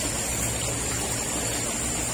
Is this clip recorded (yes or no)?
yes